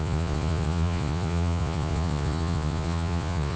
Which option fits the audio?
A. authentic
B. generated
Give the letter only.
B